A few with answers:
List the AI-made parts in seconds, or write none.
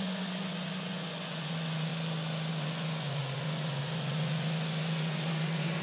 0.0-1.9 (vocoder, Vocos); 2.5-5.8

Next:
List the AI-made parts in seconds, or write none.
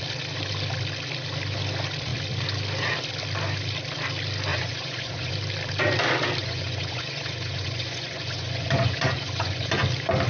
4.5-5.3 (vocoder, Vocos); 6.4-9.7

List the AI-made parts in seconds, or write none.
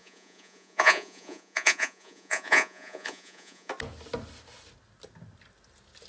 0.0-3.7 (vocoder, Vocos)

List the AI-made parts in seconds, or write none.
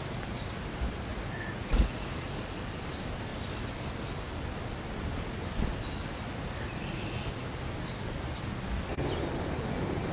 1.1-2.6 (vocoder, Vocos); 6.0-7.2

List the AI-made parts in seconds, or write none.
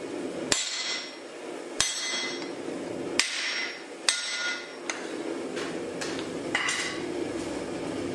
none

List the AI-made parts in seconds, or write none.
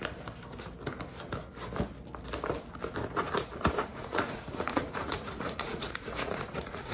3.9-6.9 (vocoder, Vocos)